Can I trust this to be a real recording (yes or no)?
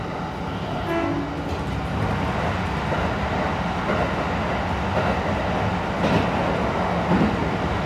yes